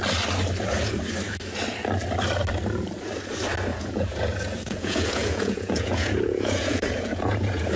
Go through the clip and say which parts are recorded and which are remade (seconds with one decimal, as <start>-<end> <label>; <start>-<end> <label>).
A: 0.0-3.7 recorded; 3.7-7.8 remade